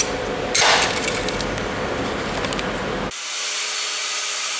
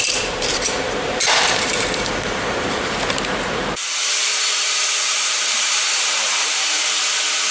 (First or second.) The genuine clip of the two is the first